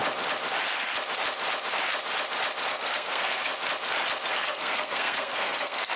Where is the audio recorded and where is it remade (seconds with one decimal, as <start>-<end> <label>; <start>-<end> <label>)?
0.0-2.7 recorded; 2.7-3.5 remade; 3.5-4.3 recorded; 4.3-6.0 remade